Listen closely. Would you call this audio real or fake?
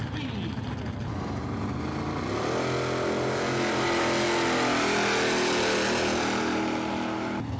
real